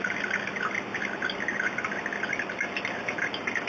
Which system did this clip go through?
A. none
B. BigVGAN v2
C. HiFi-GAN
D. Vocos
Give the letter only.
A